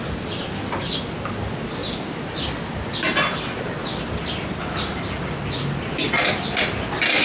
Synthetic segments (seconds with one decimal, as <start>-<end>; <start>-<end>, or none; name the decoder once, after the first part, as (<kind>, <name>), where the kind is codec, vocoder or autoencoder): none